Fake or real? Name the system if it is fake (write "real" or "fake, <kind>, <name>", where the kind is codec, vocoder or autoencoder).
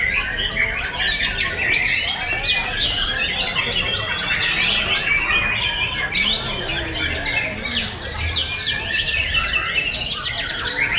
real